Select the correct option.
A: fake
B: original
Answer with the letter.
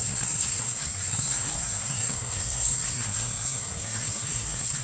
A